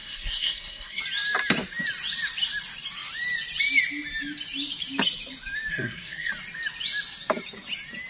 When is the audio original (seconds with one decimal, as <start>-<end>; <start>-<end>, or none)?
1.0-5.7; 6.3-8.1